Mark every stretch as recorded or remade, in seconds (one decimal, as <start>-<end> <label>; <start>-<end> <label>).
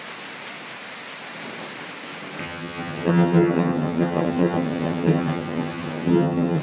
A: 0.0-2.4 recorded; 2.4-6.6 remade